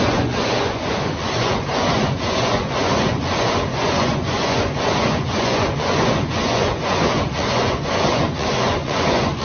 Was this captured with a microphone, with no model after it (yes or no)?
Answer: no